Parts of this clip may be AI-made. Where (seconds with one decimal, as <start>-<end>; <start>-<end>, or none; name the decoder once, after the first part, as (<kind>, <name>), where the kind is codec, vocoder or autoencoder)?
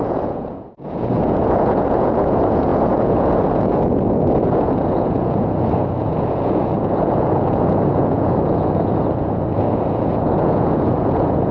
0.0-11.5 (vocoder, Vocos)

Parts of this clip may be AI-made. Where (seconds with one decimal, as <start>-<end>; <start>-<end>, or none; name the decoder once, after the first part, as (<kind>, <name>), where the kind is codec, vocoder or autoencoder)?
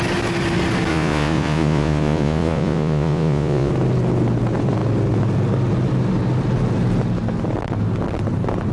0.9-3.7 (vocoder, Vocos)